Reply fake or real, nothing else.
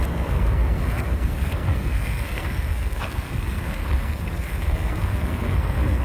fake